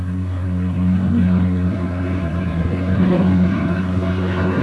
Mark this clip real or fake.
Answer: fake